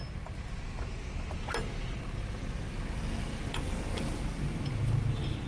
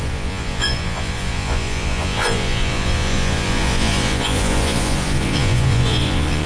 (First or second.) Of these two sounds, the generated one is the second